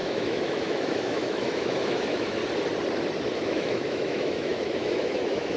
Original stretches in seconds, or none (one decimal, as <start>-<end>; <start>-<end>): 2.4-3.3